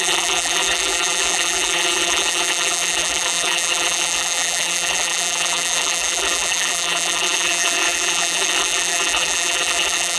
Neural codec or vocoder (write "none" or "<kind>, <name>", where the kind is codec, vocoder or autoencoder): vocoder, BigVGAN v2